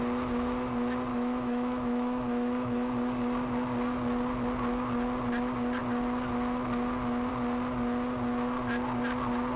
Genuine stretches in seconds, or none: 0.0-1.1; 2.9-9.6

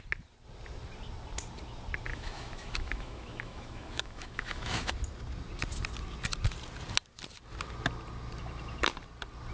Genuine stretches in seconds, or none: 0.0-2.1; 4.9-9.5